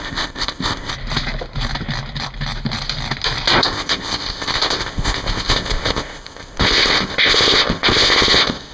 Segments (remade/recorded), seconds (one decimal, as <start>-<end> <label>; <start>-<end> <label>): 0.0-0.9 remade; 0.9-3.6 recorded; 3.6-8.7 remade

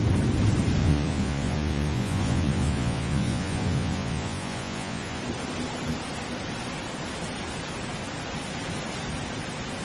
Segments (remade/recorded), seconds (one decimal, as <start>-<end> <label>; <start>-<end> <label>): 0.0-0.8 recorded; 0.8-5.2 remade; 5.2-9.8 recorded

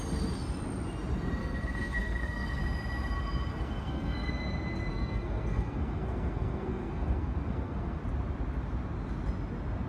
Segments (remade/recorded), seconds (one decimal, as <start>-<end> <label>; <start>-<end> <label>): 0.0-1.4 recorded; 1.4-2.6 remade; 2.6-3.5 recorded; 3.5-4.3 remade; 4.3-4.9 recorded; 4.9-8.0 remade; 8.0-9.9 recorded

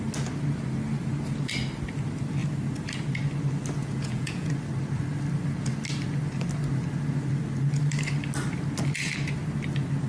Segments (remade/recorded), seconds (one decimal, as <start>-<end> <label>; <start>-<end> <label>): 0.0-3.8 recorded; 3.8-4.5 remade; 4.5-10.1 recorded